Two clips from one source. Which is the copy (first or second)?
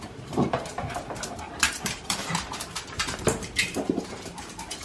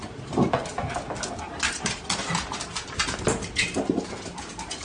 first